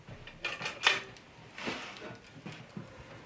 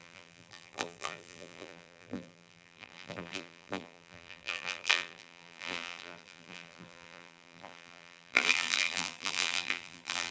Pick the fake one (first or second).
second